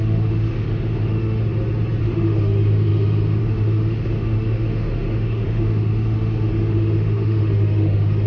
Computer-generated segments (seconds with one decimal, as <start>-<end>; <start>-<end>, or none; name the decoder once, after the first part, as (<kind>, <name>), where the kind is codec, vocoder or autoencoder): 0.0-1.4 (autoencoder, DAC-VAE); 2.0-8.3